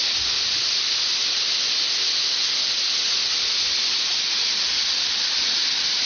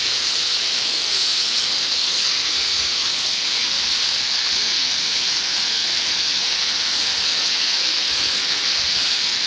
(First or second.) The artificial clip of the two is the second